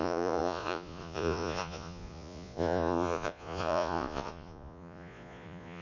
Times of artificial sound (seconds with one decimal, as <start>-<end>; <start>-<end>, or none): 0.0-5.8